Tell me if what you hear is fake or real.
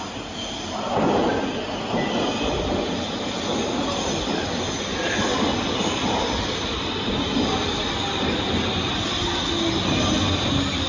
real